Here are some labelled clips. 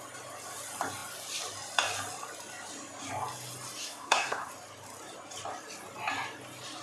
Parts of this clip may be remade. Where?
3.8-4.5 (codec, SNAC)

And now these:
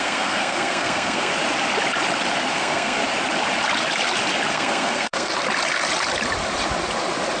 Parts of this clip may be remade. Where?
0.0-1.3 (codec, SNAC); 2.5-3.0; 4.5-5.3

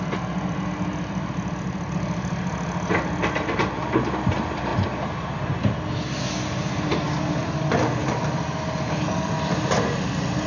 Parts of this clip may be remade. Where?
none

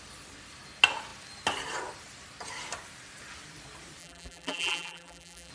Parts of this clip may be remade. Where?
4.0-5.5 (vocoder, BigVGAN v2)

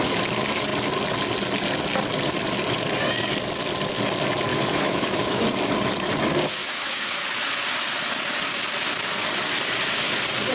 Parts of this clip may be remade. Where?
4.5-5.4 (autoencoder, DAC-VAE); 6.6-7.2